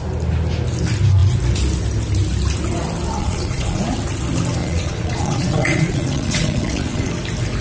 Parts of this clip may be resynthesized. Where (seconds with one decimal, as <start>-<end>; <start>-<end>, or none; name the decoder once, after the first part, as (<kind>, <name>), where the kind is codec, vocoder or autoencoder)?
3.2-3.8 (vocoder, Vocos); 4.6-7.1